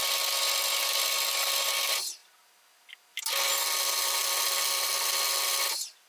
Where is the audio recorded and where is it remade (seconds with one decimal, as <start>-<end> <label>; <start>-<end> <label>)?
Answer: 0.0-6.1 recorded